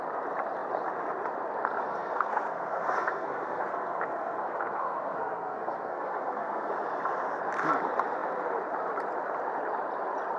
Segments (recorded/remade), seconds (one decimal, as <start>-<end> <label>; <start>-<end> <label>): 0.0-1.9 recorded; 1.9-6.7 remade; 6.7-10.4 recorded